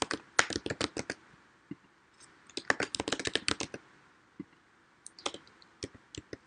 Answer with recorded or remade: recorded